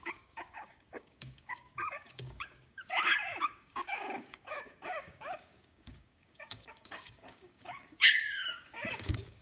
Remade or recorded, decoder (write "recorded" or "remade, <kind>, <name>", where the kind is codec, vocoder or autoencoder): remade, codec, DAC